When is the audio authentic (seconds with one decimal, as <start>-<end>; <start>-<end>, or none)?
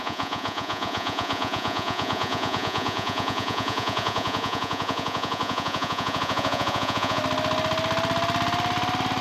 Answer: 7.2-9.2